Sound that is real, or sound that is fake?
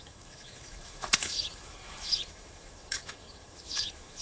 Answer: fake